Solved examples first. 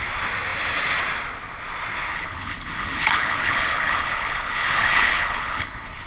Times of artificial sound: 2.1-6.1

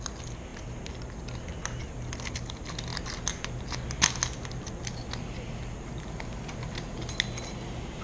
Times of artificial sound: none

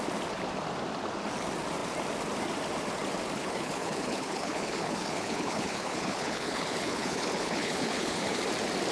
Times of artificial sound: 3.4-8.4